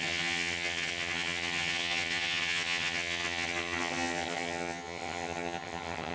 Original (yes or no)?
no